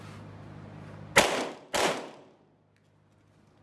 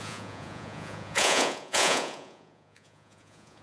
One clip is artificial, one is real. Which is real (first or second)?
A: first